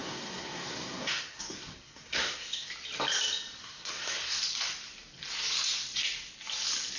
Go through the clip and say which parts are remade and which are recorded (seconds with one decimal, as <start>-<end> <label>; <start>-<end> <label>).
0.0-2.7 remade; 2.7-3.6 recorded; 3.6-4.4 remade; 4.4-7.0 recorded

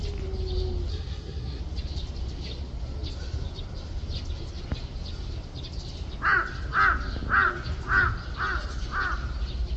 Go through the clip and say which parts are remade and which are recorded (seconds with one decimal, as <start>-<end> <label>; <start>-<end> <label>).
0.0-0.9 recorded; 0.9-1.6 remade; 1.6-9.8 recorded